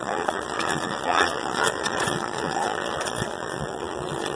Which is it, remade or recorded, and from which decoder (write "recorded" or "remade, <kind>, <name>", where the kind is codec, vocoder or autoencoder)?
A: remade, vocoder, Vocos